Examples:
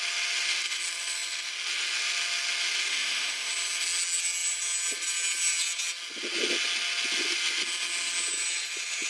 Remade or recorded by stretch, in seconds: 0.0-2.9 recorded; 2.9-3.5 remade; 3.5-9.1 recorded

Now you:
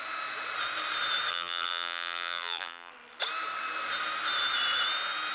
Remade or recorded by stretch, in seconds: 0.0-1.3 recorded; 1.3-2.9 remade; 2.9-5.3 recorded

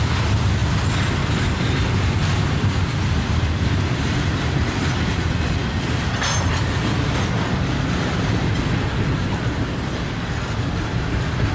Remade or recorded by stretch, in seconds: 0.0-11.5 recorded